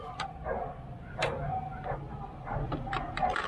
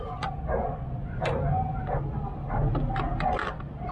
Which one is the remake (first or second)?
first